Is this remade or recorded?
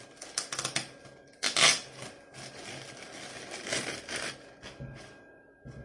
recorded